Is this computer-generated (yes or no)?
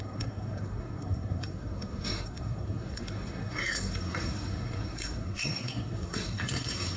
yes